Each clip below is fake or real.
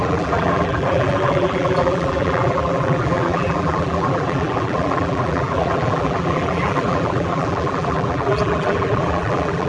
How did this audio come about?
fake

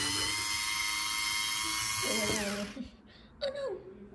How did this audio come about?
real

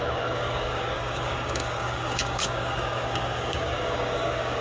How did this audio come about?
fake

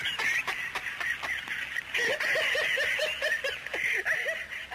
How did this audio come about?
real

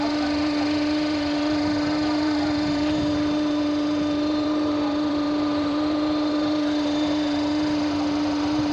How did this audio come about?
fake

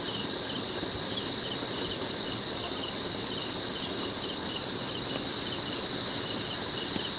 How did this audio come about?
real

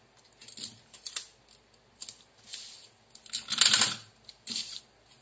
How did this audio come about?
real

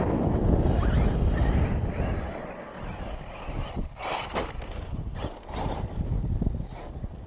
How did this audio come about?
real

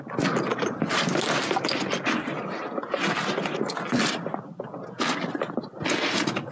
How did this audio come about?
real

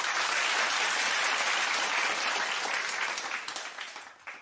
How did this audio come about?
real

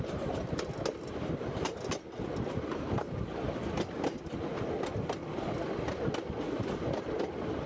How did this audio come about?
real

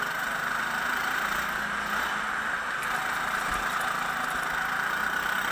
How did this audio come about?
real